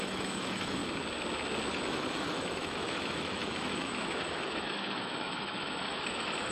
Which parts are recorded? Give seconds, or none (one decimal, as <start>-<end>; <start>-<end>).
0.8-1.7